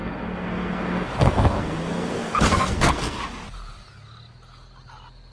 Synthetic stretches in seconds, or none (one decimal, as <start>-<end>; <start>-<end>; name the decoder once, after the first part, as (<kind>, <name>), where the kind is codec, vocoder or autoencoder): 0.0-3.2 (codec, SNAC)